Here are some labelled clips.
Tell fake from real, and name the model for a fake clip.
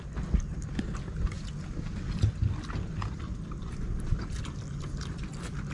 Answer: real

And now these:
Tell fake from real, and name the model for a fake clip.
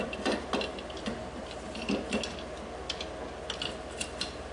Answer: real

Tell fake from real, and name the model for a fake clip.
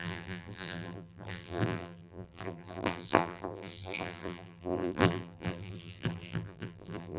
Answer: fake, vocoder, BigVGAN v2